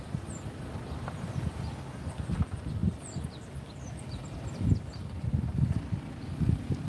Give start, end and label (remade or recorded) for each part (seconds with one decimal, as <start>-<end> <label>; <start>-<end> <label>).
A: 0.0-6.9 recorded